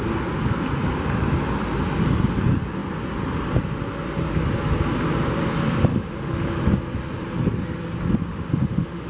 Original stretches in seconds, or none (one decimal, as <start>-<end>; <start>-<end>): 0.0-5.9; 6.5-8.3